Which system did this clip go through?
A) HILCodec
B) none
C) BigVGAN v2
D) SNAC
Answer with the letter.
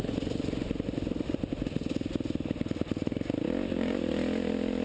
B